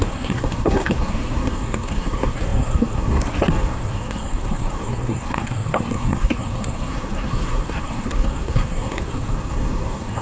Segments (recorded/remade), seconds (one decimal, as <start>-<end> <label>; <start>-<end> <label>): 0.0-10.2 remade